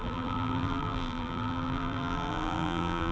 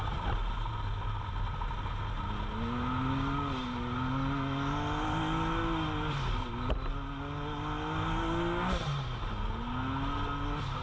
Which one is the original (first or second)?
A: second